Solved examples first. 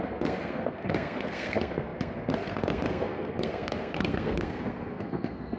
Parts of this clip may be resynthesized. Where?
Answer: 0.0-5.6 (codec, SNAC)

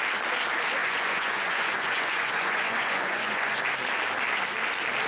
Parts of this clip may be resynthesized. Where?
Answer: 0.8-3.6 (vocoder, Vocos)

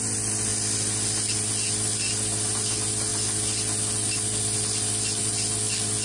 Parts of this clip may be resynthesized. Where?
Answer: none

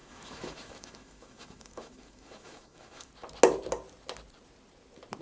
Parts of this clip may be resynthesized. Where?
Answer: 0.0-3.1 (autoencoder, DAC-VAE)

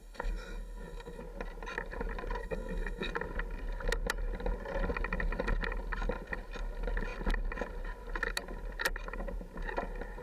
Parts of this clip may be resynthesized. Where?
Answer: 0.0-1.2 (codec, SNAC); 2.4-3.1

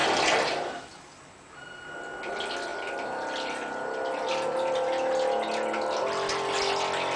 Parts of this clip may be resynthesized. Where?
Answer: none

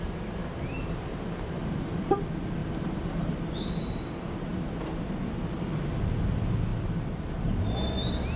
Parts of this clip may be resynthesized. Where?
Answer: 0.4-2.1 (vocoder, BigVGAN v2); 2.6-3.3